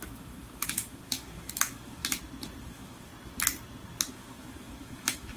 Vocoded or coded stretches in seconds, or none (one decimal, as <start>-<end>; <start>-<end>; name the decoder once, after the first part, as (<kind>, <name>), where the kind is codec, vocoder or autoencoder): 0.0-2.0 (autoencoder, DAC-VAE); 2.6-3.1; 4.1-5.4